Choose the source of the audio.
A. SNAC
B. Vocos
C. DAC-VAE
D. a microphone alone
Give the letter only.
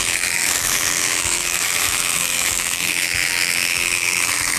C